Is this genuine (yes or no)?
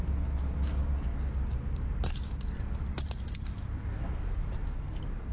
yes